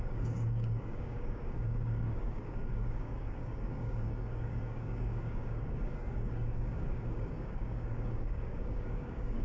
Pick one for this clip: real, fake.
fake